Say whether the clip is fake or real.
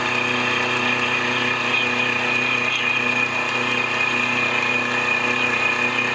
real